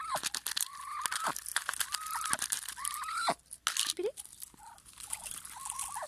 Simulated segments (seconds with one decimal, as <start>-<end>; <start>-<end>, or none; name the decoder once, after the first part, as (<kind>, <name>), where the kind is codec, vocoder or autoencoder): none